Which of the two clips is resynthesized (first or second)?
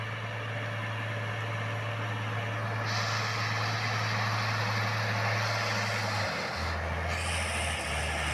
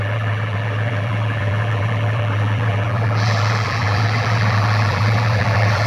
second